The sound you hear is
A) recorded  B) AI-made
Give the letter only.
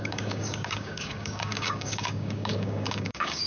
B